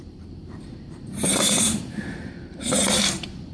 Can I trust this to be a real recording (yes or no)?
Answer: no